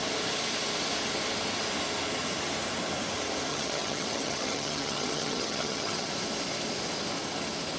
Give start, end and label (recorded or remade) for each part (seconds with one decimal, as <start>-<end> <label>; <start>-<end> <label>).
0.0-3.5 recorded; 3.5-6.1 remade; 6.1-7.8 recorded